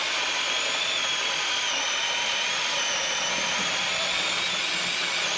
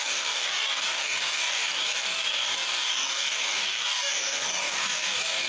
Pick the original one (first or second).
first